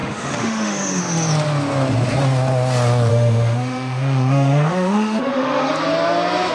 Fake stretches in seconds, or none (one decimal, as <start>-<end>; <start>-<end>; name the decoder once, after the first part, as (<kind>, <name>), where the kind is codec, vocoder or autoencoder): 0.0-1.0 (autoencoder, DAC-VAE); 3.1-5.7